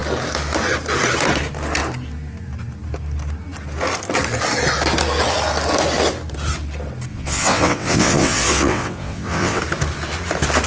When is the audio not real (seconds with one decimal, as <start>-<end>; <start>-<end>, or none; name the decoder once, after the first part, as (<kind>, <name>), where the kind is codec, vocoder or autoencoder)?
7.1-9.6 (vocoder, WaveNeXt)